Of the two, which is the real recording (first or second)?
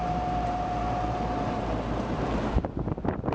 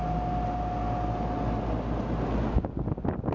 second